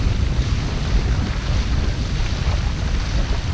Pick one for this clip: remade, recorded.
recorded